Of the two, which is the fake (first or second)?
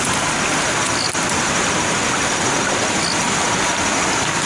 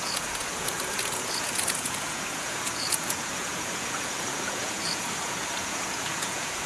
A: second